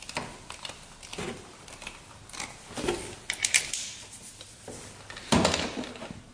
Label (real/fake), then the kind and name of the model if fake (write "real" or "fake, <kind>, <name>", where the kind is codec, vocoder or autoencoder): real